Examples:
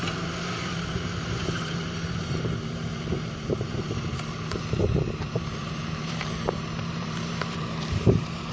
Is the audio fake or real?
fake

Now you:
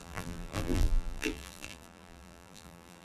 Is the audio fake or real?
fake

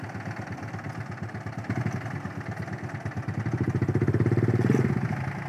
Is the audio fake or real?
real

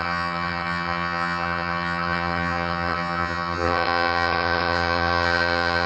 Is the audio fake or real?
fake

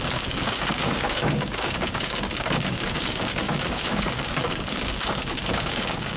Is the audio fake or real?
fake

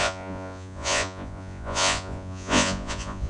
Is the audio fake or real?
fake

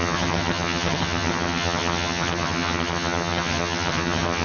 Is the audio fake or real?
fake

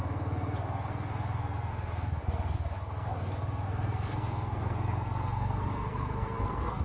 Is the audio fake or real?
fake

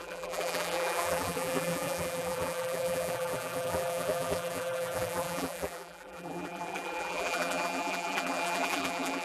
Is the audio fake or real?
fake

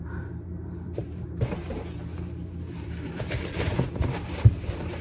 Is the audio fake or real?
fake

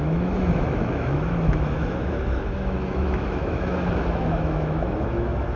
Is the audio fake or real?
fake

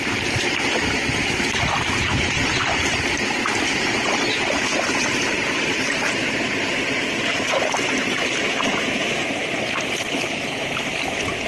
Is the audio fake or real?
fake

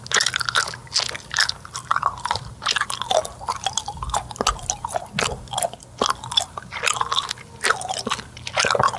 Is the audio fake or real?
real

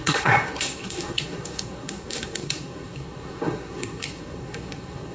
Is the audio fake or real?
fake